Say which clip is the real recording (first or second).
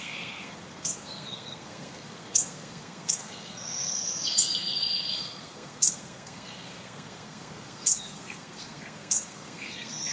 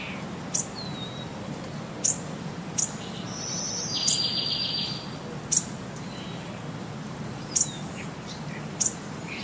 second